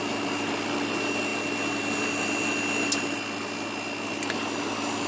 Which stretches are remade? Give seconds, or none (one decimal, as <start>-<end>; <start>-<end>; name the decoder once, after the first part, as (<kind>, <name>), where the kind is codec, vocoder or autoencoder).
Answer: none